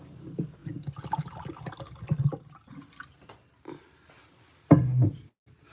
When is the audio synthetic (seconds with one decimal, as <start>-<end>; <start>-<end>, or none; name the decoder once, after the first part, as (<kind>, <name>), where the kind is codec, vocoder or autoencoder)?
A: none